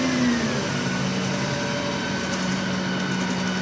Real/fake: real